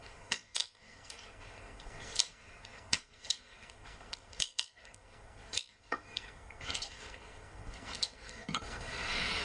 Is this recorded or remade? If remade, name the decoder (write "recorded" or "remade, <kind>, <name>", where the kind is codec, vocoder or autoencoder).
remade, codec, SNAC